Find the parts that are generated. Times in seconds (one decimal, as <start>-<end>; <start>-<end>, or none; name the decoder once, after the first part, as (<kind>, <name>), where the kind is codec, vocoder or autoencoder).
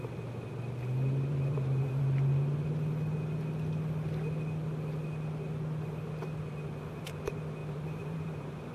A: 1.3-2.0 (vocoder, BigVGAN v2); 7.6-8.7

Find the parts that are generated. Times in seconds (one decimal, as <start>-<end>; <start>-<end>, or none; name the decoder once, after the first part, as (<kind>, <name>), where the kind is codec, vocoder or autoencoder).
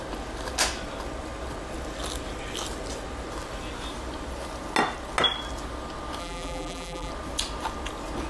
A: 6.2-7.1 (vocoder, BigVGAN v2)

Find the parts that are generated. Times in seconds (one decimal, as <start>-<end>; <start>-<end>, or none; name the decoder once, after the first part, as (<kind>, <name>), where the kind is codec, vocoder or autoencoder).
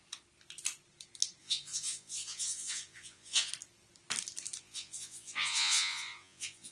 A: 1.4-3.5 (vocoder, Vocos); 4.6-6.7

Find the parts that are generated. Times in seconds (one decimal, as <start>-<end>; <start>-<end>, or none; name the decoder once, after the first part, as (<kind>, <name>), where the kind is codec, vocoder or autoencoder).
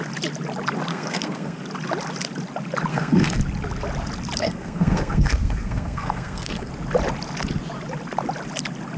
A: 0.9-1.6 (codec, SNAC); 2.9-3.4; 4.4-6.7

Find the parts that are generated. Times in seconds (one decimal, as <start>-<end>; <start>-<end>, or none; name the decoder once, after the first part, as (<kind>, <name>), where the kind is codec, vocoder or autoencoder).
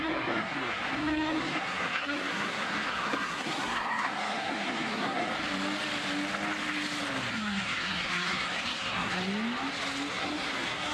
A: 0.0-5.3 (codec, SNAC); 7.3-9.2; 10.1-10.9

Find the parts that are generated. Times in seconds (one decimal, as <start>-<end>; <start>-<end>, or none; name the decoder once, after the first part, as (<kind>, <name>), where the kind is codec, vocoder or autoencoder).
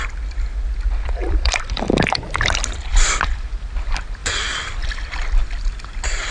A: 1.2-2.2 (vocoder, BigVGAN v2); 2.9-3.7; 4.2-4.9